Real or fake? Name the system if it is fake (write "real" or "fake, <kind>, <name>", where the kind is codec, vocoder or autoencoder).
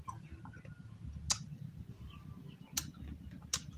real